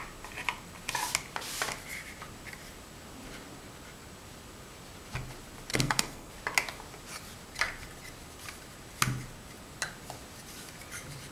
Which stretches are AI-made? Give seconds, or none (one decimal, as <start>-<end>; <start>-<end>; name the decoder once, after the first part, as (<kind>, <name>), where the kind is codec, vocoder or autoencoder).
5.7-6.3 (codec, SNAC)